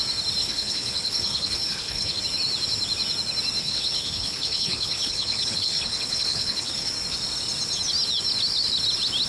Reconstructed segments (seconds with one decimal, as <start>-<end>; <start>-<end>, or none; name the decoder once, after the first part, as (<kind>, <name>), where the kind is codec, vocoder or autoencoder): 0.4-2.2 (codec, HILCodec); 3.6-6.9